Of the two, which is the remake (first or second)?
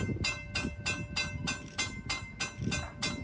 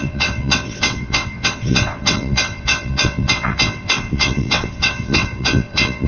second